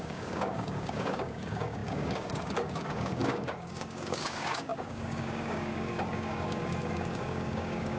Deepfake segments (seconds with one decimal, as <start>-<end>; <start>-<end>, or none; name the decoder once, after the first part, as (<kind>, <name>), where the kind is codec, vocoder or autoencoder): 0.0-8.0 (codec, DAC)